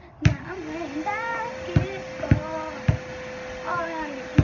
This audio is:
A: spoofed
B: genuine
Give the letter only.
B